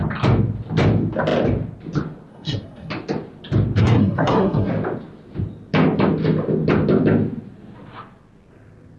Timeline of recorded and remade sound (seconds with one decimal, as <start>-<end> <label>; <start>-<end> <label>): 0.0-2.3 recorded; 2.3-2.9 remade; 2.9-3.8 recorded; 3.8-4.7 remade; 4.7-9.0 recorded

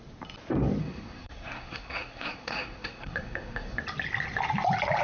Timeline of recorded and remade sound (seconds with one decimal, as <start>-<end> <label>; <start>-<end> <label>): 0.0-0.8 recorded; 0.8-3.8 remade; 3.8-5.0 recorded

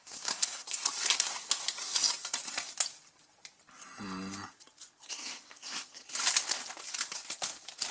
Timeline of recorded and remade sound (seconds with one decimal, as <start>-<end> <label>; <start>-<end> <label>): 0.0-0.8 remade; 0.8-5.1 recorded; 5.1-6.0 remade; 6.0-7.9 recorded

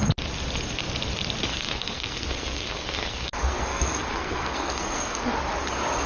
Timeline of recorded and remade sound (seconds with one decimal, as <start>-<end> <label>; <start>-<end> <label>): 0.0-1.5 recorded; 1.5-5.2 remade; 5.2-6.1 recorded

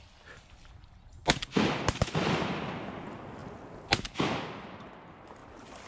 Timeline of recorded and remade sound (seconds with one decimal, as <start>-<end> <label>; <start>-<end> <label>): 0.0-5.9 recorded

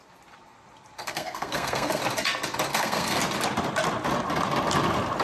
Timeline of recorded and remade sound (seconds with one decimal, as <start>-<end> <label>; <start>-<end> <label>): 0.0-1.0 recorded; 1.0-2.0 remade; 2.0-2.7 recorded; 2.7-3.2 remade; 3.2-5.2 recorded

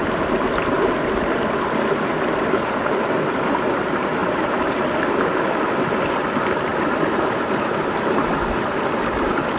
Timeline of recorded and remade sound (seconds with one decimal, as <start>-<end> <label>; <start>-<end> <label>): 0.0-9.6 recorded

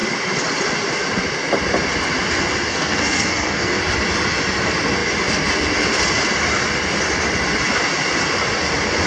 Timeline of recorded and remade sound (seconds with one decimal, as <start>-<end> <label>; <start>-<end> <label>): 0.0-2.7 recorded; 2.7-3.8 remade; 3.8-9.1 recorded